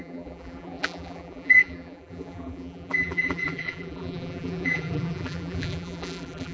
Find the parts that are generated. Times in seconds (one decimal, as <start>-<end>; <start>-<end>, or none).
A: 0.0-6.5